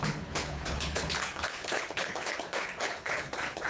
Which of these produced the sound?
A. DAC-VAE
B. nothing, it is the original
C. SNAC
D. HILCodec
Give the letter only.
D